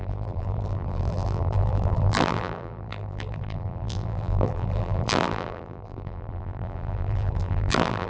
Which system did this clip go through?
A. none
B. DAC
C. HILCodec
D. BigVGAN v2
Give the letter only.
D